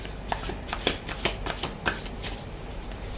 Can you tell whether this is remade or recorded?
recorded